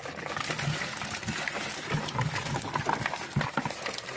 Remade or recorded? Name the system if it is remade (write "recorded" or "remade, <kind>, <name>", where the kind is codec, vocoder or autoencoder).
recorded